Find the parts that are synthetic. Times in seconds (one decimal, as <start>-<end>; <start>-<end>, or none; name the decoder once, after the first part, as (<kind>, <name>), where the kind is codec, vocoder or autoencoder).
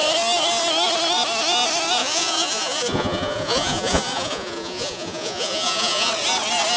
2.0-6.1 (vocoder, Vocos)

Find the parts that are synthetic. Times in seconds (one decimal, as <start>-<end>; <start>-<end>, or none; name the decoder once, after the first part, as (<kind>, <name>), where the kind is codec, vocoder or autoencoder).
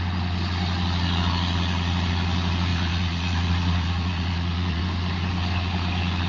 2.7-4.8 (vocoder, Vocos)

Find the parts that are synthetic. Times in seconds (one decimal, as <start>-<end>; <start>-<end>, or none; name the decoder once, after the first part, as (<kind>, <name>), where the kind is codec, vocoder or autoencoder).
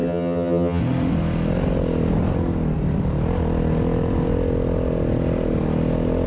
0.0-0.8 (vocoder, HiFi-GAN)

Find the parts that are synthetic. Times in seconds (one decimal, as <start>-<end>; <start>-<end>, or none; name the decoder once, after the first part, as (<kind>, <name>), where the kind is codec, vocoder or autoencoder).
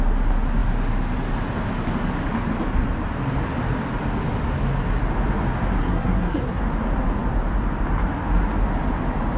5.8-6.6 (codec, SNAC)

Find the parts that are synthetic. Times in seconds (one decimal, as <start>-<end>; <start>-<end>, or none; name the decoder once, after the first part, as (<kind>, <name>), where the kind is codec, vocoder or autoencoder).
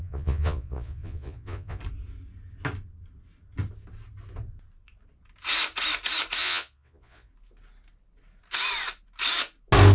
0.0-1.8 (vocoder, Vocos); 6.4-7.3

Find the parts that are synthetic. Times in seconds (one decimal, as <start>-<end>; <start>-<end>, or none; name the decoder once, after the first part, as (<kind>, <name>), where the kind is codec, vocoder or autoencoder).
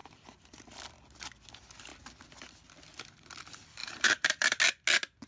0.0-0.8 (vocoder, BigVGAN v2); 3.8-4.6